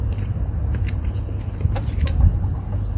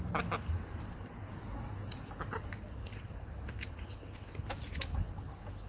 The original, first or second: second